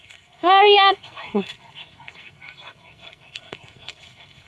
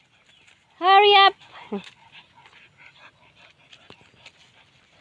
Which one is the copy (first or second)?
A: first